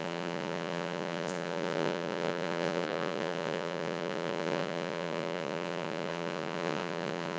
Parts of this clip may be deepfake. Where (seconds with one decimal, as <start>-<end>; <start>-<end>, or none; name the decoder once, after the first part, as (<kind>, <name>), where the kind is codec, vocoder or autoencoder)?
0.0-7.4 (vocoder, Vocos)